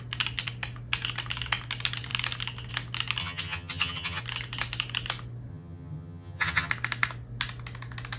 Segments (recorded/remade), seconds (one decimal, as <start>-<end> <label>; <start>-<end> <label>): 0.0-3.2 recorded; 3.2-4.2 remade; 4.2-5.5 recorded; 5.5-6.7 remade; 6.7-8.2 recorded

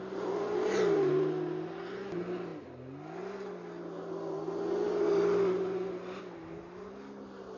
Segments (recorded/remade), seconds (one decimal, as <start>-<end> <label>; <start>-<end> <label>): 0.0-7.6 recorded

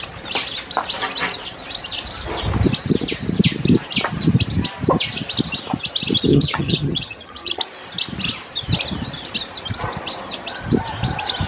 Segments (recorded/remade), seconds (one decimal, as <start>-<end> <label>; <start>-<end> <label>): 0.0-6.3 recorded; 6.3-7.6 remade; 7.6-11.5 recorded

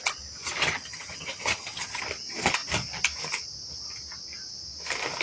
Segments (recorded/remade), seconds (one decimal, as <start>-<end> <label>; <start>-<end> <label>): 0.0-0.6 recorded; 0.6-2.0 remade; 2.0-5.2 recorded

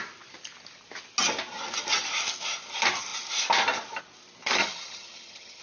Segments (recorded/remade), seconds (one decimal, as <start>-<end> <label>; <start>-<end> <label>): 0.0-4.6 recorded; 4.6-5.6 remade

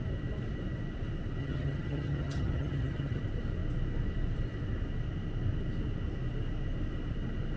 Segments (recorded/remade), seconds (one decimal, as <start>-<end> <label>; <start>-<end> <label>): 0.0-1.4 recorded; 1.4-3.2 remade; 3.2-7.6 recorded

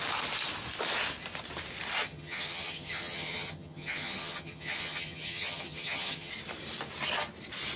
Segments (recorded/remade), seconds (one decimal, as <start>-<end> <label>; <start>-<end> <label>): 0.0-2.0 recorded; 2.0-6.3 remade; 6.3-7.8 recorded

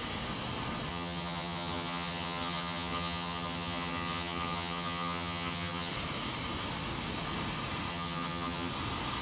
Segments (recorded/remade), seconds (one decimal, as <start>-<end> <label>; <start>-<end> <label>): 0.0-0.9 recorded; 0.9-5.9 remade; 5.9-7.9 recorded; 7.9-8.7 remade; 8.7-9.2 recorded